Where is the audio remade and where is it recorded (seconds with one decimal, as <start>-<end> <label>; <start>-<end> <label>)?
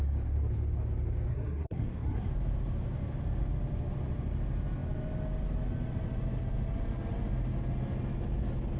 0.0-1.3 recorded; 1.3-2.3 remade; 2.3-8.8 recorded